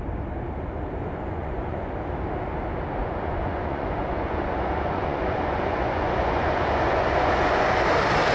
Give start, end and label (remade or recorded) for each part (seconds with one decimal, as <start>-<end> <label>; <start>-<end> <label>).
0.0-1.0 recorded; 1.0-1.9 remade; 1.9-3.0 recorded; 3.0-7.7 remade; 7.7-8.3 recorded